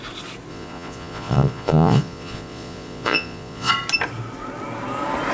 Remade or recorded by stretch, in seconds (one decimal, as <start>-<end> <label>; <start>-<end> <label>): 0.0-0.5 recorded; 0.5-3.7 remade; 3.7-5.3 recorded